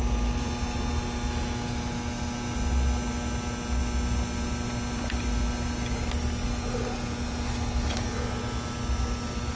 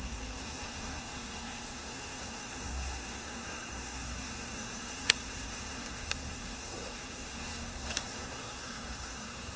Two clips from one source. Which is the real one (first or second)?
first